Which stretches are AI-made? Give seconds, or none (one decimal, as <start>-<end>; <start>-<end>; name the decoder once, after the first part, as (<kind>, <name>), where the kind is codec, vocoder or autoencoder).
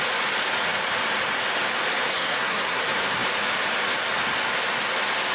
2.1-2.8 (codec, SNAC)